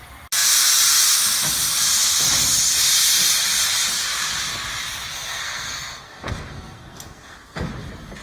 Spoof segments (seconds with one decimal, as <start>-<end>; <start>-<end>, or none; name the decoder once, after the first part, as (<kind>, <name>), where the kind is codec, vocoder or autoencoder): 5.1-7.7 (codec, SNAC)